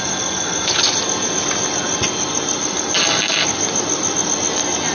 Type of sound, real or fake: real